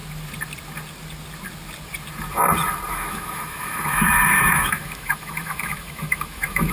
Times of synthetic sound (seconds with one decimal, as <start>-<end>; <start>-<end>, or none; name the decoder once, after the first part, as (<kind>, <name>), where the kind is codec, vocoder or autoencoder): 2.9-6.7 (autoencoder, DAC-VAE)